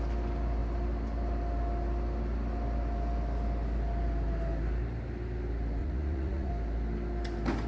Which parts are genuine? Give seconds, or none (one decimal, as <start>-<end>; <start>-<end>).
0.0-5.8; 6.5-7.7